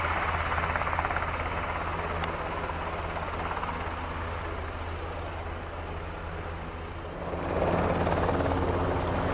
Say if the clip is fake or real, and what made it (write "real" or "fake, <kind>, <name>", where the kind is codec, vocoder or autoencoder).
real